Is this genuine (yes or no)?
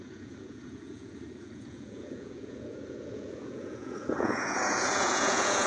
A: no